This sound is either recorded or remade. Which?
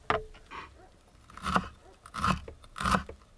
recorded